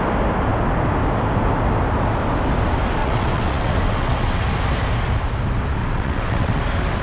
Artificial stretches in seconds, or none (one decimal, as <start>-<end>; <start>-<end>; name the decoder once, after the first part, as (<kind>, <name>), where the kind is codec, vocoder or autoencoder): 3.0-4.4 (vocoder, WaveNeXt); 5.8-6.6